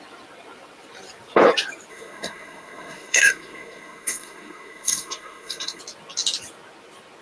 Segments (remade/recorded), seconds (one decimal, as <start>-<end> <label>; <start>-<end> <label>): 0.0-1.9 recorded; 1.9-5.8 remade; 5.8-7.2 recorded